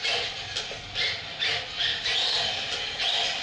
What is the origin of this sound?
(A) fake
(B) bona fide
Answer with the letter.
B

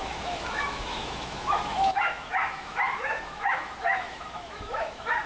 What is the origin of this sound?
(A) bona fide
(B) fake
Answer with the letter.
B